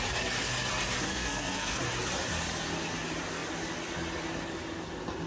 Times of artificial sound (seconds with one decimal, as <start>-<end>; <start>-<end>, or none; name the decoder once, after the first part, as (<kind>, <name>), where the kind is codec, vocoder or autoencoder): 1.1-1.8 (codec, SNAC)